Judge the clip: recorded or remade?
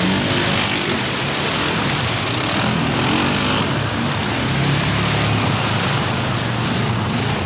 recorded